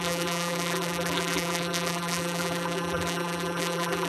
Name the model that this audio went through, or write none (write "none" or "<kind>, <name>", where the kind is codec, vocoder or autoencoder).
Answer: vocoder, BigVGAN v2